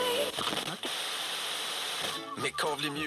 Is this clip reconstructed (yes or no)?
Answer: no